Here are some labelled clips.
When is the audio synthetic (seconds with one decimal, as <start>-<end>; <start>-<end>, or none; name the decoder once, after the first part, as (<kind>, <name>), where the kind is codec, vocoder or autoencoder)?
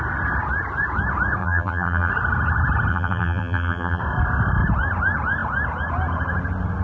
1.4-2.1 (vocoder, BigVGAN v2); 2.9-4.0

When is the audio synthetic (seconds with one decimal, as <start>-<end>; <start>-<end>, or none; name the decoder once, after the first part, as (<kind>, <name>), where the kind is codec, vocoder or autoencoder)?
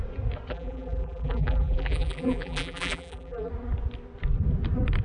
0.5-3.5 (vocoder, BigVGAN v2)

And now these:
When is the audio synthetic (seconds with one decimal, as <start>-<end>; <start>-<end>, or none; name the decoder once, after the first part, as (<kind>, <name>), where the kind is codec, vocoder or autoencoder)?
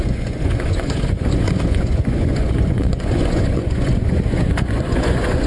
0.0-5.5 (vocoder, Vocos)